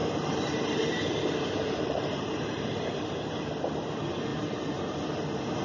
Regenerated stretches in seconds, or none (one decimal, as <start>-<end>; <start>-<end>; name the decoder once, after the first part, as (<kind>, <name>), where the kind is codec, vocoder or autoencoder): 0.0-3.4 (vocoder, BigVGAN v2); 4.3-4.8